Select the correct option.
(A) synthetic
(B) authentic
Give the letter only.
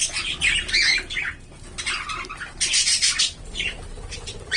B